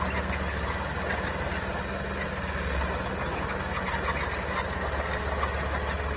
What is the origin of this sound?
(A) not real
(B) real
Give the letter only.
B